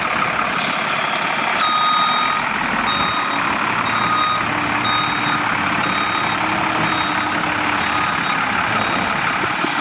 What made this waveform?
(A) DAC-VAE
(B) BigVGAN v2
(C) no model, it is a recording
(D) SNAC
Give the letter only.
C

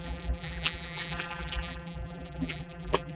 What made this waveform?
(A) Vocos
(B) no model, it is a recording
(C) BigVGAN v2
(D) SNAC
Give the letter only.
C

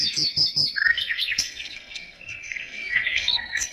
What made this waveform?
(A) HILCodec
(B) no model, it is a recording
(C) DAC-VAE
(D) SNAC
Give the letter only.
D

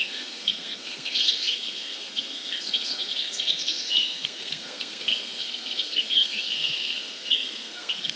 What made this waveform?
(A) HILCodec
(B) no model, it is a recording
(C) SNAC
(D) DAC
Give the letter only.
C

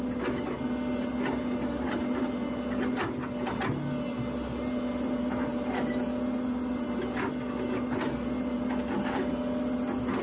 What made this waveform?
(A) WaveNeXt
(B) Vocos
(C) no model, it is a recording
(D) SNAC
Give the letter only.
C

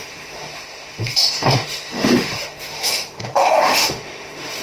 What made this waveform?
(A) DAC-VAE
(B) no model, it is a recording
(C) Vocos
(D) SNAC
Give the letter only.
A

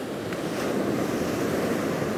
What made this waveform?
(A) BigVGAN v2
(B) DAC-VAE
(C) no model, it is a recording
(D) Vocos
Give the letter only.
C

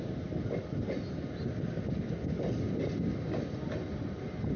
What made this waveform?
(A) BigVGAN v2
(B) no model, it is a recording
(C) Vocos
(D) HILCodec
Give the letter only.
B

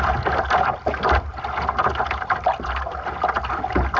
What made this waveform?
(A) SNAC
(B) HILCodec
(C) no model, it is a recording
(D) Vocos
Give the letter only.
C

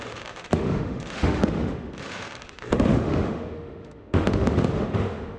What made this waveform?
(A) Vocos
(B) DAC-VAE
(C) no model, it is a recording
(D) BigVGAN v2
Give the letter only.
B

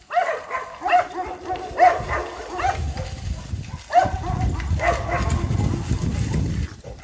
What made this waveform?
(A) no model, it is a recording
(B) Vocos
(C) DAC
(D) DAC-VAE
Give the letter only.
A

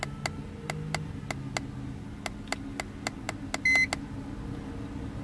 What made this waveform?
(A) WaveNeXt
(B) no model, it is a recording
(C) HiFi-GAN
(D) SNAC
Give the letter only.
B